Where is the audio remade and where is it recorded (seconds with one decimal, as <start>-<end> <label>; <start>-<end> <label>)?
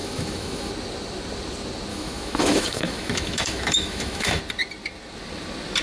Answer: 0.0-0.7 remade; 0.7-1.9 recorded; 1.9-4.4 remade; 4.4-5.8 recorded